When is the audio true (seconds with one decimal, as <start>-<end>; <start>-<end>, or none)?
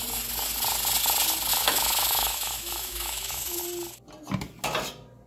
0.0-1.5; 3.6-5.3